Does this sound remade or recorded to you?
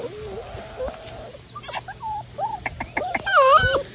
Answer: recorded